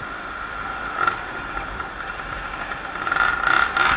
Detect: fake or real real